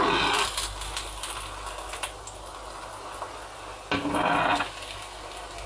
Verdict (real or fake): real